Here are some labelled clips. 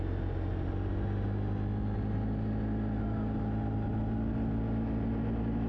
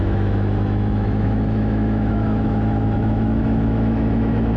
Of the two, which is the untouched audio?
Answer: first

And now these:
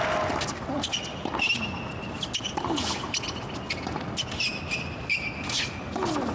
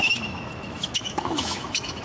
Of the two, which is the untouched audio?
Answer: first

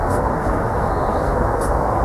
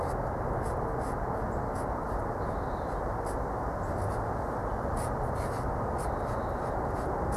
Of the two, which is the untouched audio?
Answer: second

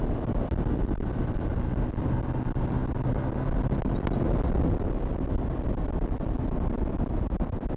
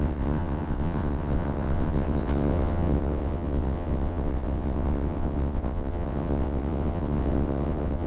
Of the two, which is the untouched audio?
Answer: first